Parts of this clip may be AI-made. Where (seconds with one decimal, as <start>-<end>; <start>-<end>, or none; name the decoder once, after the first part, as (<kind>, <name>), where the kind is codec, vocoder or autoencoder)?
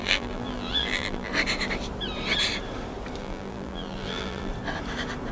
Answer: 0.0-1.3 (vocoder, BigVGAN v2); 3.2-4.5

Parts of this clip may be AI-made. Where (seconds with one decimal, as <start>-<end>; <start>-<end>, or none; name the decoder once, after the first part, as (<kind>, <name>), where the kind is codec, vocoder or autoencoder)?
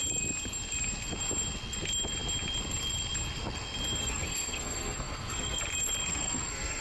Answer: 4.0-5.6 (codec, SNAC); 6.1-6.8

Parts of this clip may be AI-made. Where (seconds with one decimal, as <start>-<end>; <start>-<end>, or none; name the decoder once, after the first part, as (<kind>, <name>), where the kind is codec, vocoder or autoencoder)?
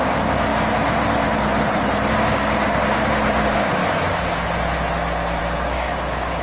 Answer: 0.0-0.5 (codec, DAC); 2.1-3.8; 5.4-6.4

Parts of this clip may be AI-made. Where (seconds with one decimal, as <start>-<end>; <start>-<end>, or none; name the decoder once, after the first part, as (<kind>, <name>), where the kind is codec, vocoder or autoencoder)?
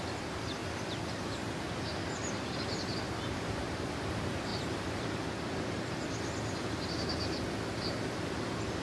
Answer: 0.0-8.8 (vocoder, BigVGAN v2)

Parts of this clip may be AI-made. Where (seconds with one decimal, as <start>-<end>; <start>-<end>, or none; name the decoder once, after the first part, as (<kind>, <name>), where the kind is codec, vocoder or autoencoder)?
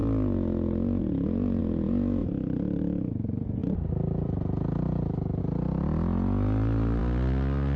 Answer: 2.2-2.8 (vocoder, BigVGAN v2); 3.6-5.4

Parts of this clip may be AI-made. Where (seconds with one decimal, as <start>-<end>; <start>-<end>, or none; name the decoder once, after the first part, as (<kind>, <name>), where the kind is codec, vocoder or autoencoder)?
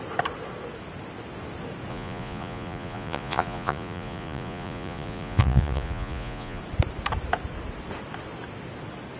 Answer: 1.9-6.6 (vocoder, Vocos)